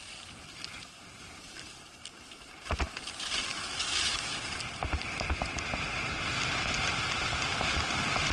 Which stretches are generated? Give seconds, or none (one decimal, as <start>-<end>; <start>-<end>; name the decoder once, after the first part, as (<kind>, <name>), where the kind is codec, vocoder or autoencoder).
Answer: 3.5-4.3 (autoencoder, DAC-VAE)